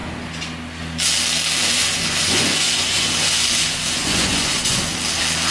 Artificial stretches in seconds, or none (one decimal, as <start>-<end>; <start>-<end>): 1.6-4.8